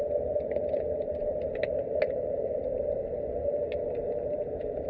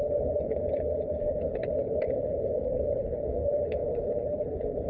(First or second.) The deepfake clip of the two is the second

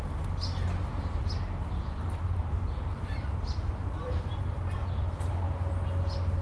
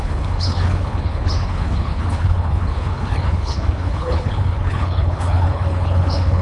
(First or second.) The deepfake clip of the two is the second